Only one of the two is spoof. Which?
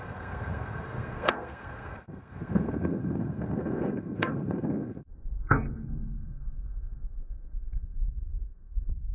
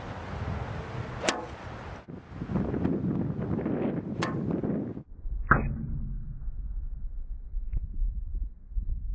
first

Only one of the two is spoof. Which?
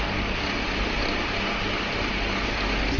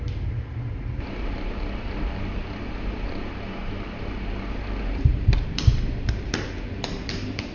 second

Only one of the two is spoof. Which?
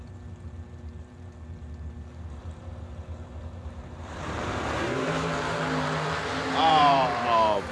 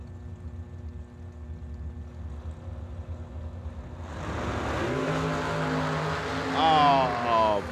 first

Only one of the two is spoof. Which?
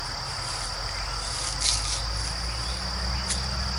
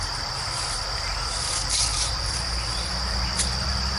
second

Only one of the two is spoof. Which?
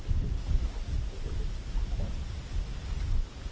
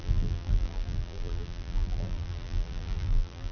second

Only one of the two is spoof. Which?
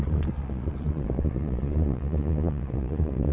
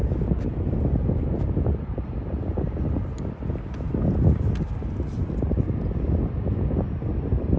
first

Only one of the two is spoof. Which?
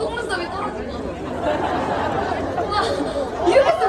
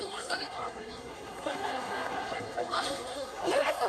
second